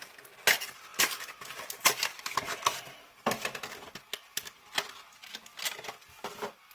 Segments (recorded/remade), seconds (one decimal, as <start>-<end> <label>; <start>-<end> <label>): 0.0-6.7 recorded